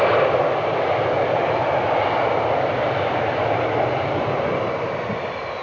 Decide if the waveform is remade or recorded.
recorded